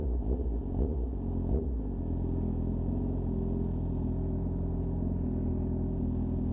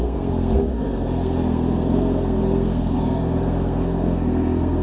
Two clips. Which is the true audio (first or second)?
first